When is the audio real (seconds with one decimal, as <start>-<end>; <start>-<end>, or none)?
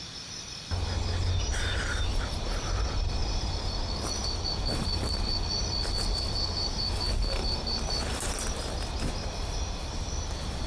0.0-10.7